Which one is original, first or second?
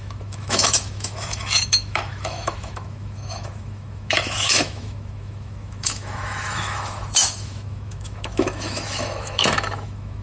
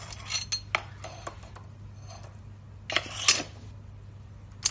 second